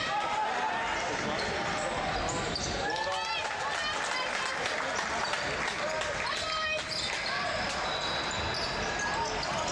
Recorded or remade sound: recorded